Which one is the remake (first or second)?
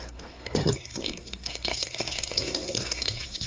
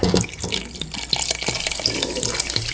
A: first